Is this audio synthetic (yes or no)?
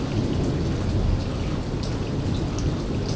no